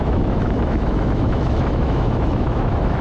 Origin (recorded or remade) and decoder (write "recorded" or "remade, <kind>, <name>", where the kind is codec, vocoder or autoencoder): remade, autoencoder, DAC-VAE